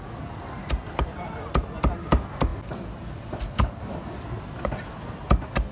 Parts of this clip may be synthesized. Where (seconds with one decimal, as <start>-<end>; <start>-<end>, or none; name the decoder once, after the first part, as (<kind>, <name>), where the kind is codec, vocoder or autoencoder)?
none